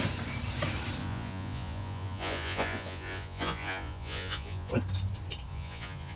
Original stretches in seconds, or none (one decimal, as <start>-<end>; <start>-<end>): 0.0-1.0; 4.7-5.5